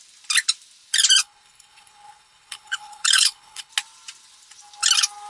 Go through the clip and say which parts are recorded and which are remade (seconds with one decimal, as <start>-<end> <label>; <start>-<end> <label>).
0.0-1.2 recorded; 1.2-3.7 remade; 3.7-5.3 recorded